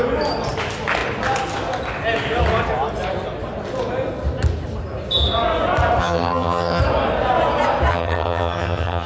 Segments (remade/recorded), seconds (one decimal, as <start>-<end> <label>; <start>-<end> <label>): 0.0-6.0 recorded; 6.0-6.8 remade; 6.8-7.9 recorded; 7.9-9.1 remade